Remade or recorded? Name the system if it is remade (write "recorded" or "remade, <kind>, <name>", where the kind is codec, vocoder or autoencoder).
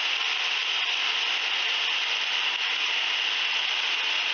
recorded